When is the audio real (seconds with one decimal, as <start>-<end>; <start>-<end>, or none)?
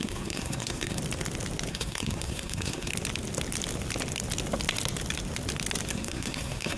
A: 1.0-1.7; 2.9-5.9